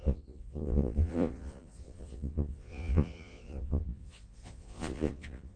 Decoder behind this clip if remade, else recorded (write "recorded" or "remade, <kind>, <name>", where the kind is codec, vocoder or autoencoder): remade, vocoder, Vocos